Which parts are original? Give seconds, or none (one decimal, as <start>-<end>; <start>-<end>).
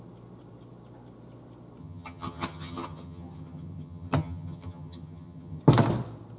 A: 0.0-1.8; 5.6-6.4